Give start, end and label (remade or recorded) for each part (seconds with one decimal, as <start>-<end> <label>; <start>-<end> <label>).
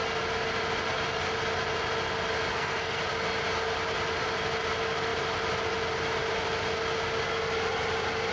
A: 0.0-2.5 recorded; 2.5-3.0 remade; 3.0-8.3 recorded